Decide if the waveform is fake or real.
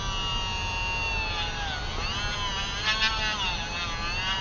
real